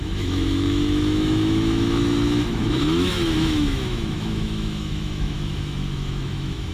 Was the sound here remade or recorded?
remade